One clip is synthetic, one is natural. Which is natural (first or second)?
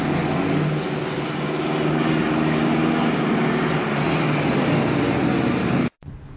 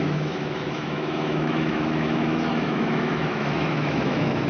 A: first